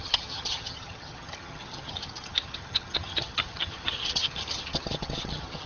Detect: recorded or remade remade